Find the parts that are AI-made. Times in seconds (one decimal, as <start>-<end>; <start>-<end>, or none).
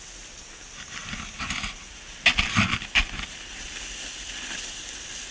none